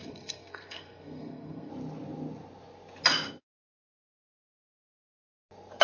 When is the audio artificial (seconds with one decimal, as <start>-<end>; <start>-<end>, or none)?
0.0-1.7